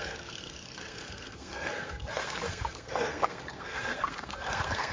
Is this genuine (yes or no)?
no